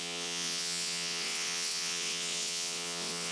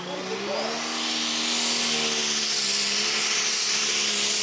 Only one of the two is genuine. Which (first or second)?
second